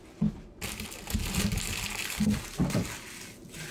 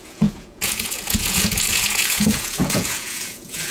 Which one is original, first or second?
first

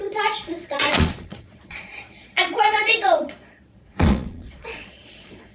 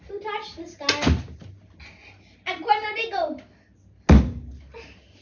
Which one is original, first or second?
second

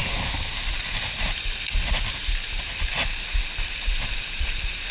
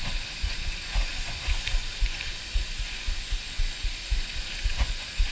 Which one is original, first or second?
first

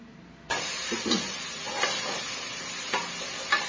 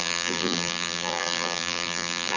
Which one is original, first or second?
first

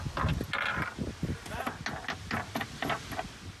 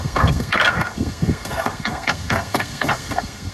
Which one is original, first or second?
first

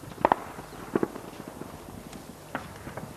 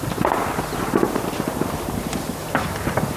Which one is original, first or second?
first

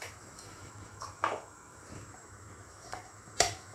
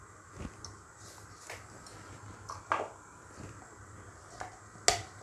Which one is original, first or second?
second